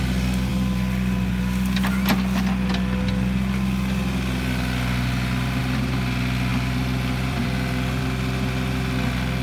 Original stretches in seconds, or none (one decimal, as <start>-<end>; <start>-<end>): 0.0-6.5; 8.0-9.4

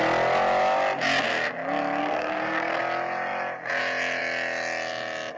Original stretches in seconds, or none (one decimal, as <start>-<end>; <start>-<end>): 0.0-2.0; 2.8-5.4

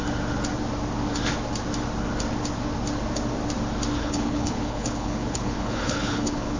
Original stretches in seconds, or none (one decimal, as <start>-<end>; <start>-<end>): 0.0-4.0

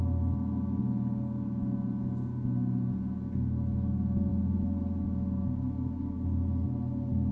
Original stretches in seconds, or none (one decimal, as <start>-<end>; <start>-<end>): 0.0-7.3

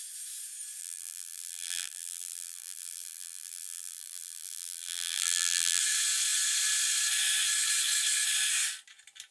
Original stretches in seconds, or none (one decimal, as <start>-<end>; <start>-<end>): 0.0-0.8; 5.8-9.3

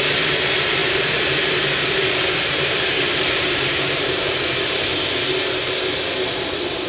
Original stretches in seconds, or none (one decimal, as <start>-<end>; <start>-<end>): 0.0-0.8; 4.9-6.9